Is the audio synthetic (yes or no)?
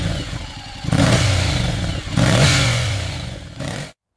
yes